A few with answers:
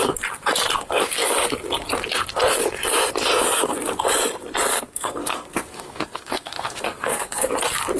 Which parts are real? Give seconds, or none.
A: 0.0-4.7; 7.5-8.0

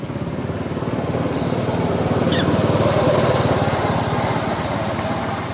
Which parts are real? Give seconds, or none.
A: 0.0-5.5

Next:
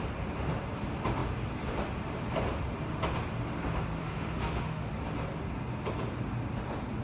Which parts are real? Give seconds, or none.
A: 0.0-4.0; 4.9-7.0

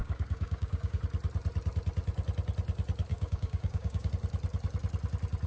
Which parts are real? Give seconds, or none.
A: 1.0-3.1; 4.1-5.5

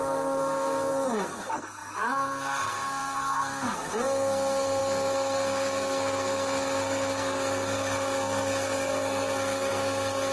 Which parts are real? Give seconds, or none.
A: none

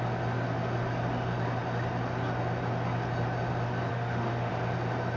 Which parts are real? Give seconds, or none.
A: 0.0-3.9; 4.5-5.2

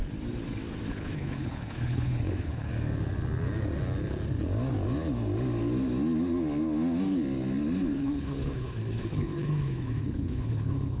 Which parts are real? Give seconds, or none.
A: 0.0-0.9; 2.7-8.0